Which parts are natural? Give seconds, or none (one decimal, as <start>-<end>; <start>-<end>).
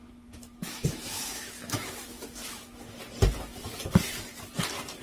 3.0-5.0